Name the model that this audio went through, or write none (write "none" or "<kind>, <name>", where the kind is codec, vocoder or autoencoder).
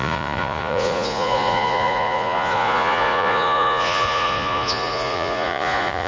vocoder, Vocos